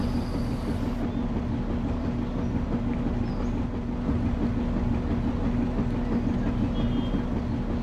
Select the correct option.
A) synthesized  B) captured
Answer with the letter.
B